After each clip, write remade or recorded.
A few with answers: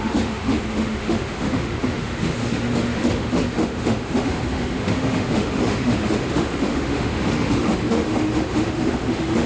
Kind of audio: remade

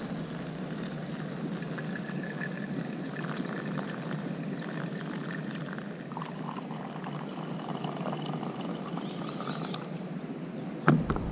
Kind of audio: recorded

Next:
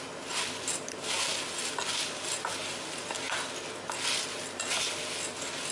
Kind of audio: recorded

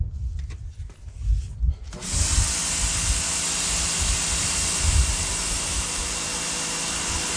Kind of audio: recorded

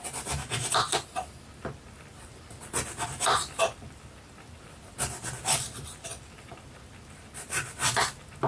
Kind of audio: recorded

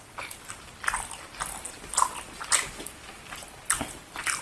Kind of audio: recorded